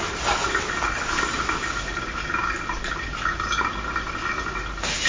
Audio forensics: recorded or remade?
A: recorded